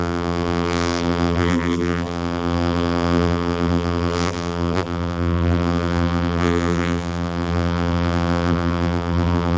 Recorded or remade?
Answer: remade